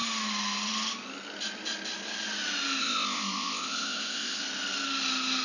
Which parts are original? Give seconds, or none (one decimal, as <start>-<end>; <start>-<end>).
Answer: 0.0-2.8; 4.4-5.4